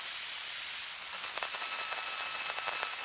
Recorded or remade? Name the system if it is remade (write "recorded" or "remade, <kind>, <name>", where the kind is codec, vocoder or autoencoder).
recorded